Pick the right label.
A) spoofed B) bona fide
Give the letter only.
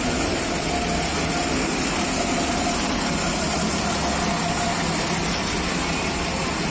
B